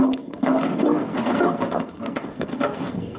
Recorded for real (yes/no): no